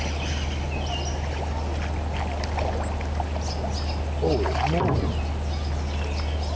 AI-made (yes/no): no